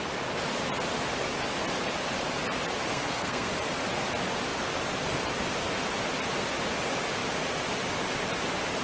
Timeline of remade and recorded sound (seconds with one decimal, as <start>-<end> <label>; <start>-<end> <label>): 0.0-2.9 recorded; 2.9-3.5 remade; 3.5-8.8 recorded